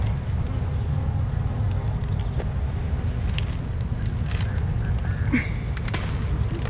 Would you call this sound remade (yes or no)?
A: no